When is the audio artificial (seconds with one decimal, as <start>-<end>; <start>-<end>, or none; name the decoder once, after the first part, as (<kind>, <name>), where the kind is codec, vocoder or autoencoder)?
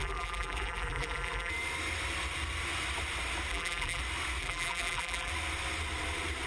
0.0-1.5 (vocoder, BigVGAN v2); 3.5-4.0; 4.4-5.3